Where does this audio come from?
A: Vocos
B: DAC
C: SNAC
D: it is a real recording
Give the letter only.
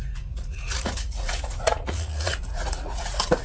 A